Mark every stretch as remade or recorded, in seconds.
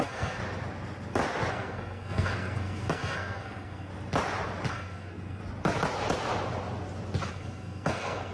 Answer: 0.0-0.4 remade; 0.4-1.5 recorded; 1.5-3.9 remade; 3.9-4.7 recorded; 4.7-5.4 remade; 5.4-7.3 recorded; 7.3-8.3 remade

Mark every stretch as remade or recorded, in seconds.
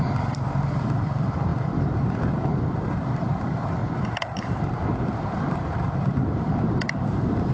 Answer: 0.0-7.5 remade